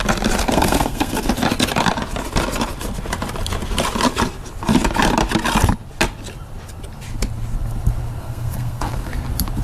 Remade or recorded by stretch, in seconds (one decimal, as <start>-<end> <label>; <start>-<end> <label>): 0.0-0.4 recorded; 0.4-1.3 remade; 1.3-8.2 recorded; 8.2-9.1 remade; 9.1-9.6 recorded